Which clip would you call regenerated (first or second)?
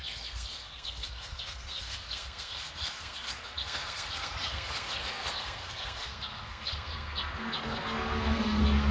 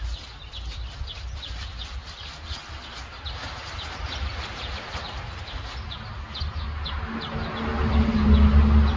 first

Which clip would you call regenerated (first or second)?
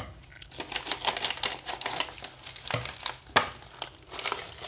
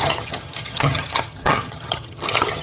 second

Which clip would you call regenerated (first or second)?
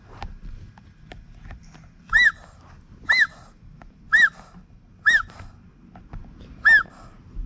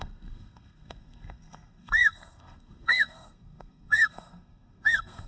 second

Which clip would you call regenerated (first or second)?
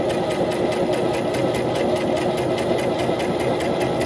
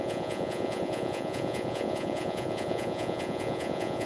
second